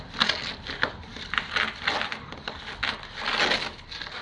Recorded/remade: recorded